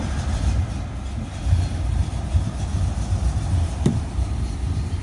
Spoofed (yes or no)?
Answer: yes